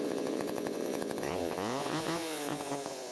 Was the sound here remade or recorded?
remade